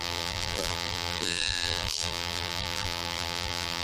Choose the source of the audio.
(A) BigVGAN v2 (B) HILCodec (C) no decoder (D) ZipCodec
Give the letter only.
A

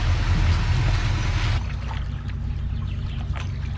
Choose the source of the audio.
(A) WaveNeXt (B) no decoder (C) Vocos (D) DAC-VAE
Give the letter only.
B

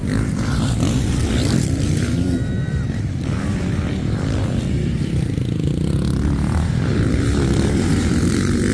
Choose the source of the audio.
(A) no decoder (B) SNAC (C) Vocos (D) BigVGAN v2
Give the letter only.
D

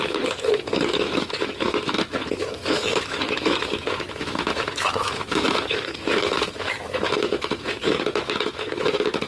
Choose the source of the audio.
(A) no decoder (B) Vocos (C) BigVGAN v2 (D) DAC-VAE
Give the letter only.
D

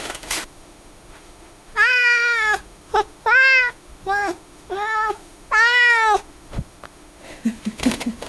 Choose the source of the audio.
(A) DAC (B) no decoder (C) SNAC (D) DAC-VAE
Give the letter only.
D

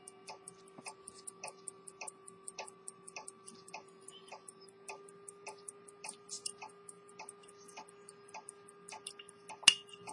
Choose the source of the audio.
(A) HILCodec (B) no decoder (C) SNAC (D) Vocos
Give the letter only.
B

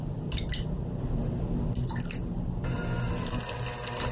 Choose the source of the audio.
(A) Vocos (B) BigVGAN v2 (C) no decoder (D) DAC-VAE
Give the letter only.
C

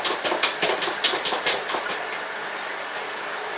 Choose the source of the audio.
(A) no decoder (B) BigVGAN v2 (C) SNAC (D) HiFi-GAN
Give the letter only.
A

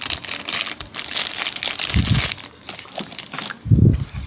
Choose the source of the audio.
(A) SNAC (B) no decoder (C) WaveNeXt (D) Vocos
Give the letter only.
B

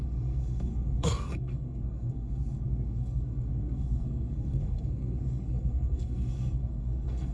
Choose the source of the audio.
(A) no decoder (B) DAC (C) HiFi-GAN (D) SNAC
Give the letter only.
D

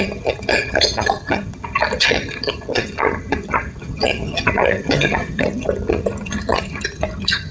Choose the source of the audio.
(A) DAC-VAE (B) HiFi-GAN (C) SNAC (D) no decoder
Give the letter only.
B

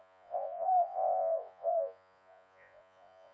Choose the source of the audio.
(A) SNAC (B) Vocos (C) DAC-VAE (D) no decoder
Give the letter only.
B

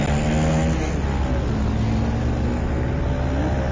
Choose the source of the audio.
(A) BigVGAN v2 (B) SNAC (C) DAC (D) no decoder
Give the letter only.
D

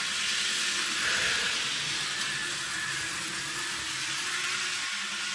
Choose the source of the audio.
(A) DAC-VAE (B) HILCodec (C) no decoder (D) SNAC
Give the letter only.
C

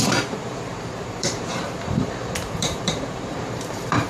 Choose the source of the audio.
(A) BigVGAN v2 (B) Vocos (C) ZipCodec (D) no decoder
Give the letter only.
A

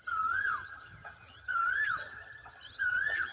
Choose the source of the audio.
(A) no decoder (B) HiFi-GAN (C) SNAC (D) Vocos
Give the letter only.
B